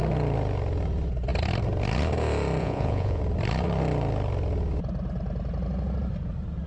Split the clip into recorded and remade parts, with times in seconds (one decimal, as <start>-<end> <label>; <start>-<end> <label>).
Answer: 0.0-2.6 recorded; 2.6-3.2 remade; 3.2-6.7 recorded